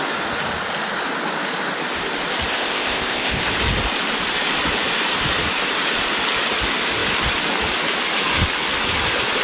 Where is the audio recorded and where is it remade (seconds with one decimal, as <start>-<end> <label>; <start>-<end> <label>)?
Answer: 0.0-2.5 recorded; 2.5-3.4 remade; 3.4-9.4 recorded